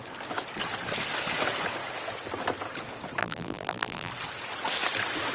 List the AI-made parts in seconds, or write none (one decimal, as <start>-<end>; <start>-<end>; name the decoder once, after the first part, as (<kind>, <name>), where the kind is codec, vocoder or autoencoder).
3.2-4.1 (vocoder, BigVGAN v2)